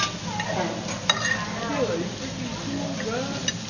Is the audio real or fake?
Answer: real